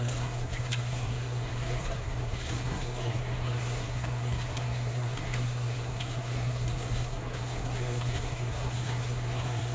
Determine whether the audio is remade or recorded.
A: remade